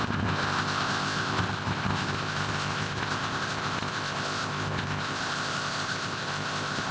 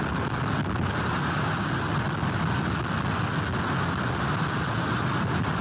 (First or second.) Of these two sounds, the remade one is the first